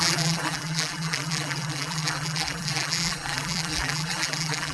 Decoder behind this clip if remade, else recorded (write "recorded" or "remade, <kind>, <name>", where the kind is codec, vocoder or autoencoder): remade, vocoder, BigVGAN v2